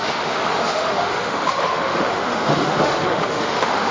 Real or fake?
fake